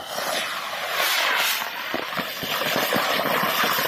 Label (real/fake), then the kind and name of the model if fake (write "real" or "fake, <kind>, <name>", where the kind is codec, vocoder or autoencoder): real